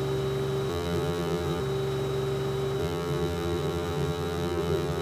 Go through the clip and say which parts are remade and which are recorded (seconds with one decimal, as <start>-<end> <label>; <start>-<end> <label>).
0.0-0.7 recorded; 0.7-1.6 remade; 1.6-2.8 recorded; 2.8-5.0 remade